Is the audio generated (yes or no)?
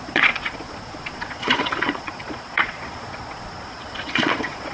yes